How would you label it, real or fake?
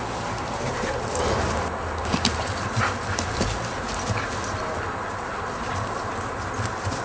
real